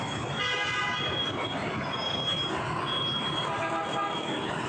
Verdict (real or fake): real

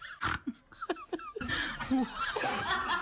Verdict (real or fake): real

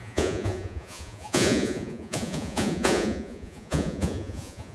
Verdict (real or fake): fake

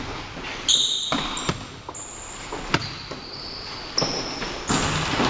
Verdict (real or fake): real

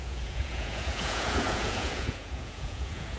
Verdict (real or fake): fake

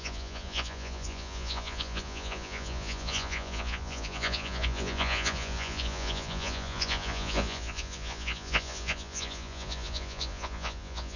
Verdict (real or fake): fake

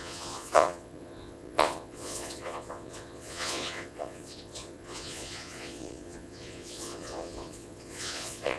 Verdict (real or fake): fake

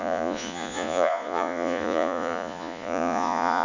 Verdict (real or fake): fake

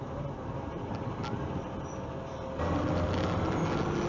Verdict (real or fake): real